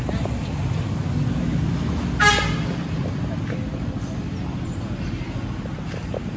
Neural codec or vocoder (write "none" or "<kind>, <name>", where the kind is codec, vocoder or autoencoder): none